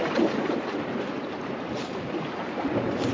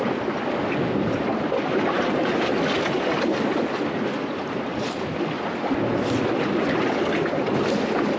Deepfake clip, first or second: first